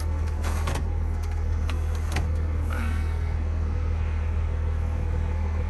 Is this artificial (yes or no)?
yes